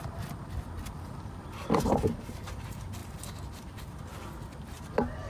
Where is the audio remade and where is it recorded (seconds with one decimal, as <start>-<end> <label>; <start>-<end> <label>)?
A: 0.0-5.3 recorded